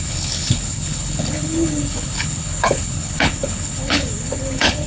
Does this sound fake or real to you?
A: fake